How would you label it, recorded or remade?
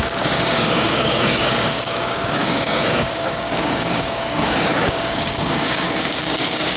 remade